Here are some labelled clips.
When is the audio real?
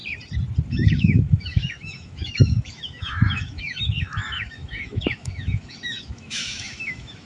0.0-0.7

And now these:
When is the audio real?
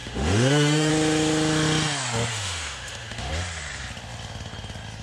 0.9-2.3; 3.3-5.0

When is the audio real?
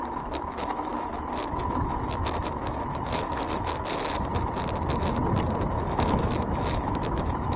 4.3-5.7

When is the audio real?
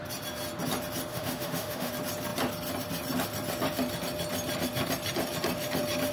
0.0-1.1; 1.9-6.1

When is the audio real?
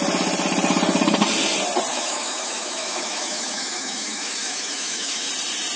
0.0-1.9; 5.3-5.8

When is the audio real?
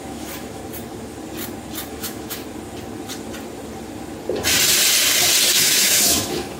0.6-1.9; 2.4-5.5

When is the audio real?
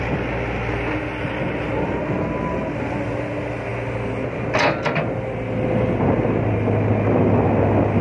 0.0-8.0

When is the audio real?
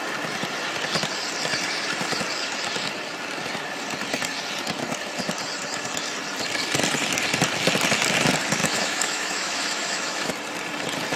0.0-8.6; 10.3-11.2